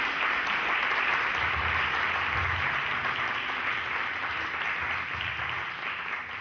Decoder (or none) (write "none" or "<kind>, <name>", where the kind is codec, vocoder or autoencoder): none